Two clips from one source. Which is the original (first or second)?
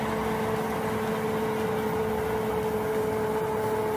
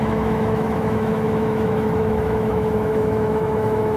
first